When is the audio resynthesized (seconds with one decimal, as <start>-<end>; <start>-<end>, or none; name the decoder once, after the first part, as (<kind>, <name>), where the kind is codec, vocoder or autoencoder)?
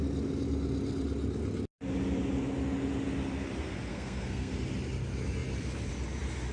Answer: 3.9-4.5 (codec, SNAC)